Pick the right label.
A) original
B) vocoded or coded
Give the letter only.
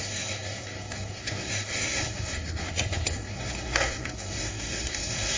B